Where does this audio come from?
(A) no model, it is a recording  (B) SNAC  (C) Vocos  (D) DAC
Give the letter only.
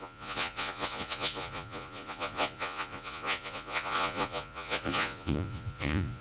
C